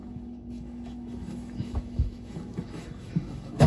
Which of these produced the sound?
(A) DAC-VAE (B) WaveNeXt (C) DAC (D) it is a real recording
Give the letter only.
A